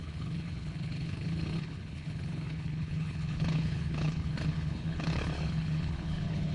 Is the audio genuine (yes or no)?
no